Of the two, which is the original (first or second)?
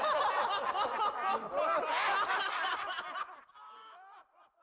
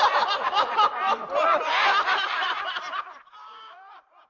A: first